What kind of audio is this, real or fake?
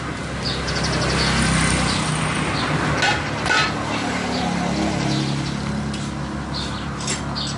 real